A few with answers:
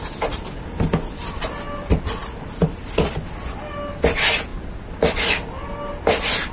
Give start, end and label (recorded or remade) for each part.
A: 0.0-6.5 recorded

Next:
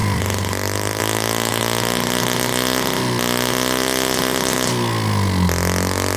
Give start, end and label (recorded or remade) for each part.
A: 0.0-1.0 remade; 1.0-6.2 recorded

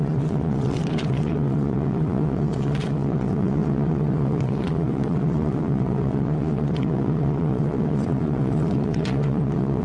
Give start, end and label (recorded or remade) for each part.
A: 0.0-9.8 remade